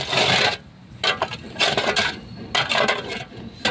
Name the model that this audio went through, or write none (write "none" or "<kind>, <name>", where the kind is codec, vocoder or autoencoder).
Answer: none